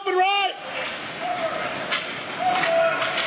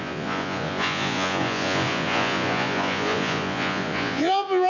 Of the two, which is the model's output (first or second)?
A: second